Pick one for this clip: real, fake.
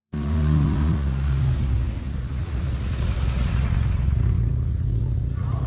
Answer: fake